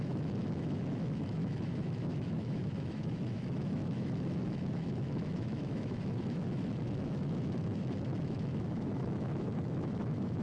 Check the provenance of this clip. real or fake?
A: fake